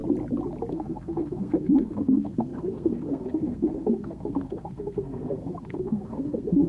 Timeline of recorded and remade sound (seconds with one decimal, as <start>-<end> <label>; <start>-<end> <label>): 0.0-0.7 recorded; 0.7-6.7 remade